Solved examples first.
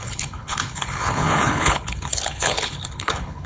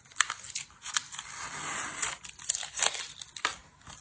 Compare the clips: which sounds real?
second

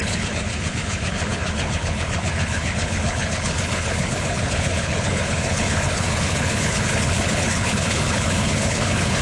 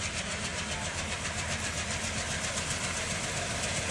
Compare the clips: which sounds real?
second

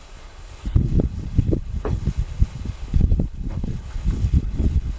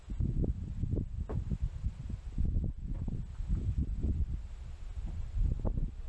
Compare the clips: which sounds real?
second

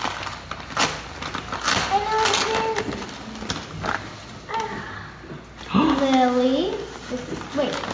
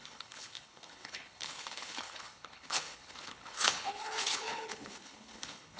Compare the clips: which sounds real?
first